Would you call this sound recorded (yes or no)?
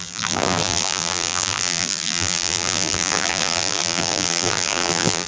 no